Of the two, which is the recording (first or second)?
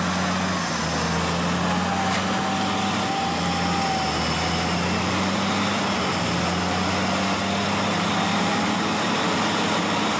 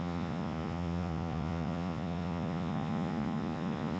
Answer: first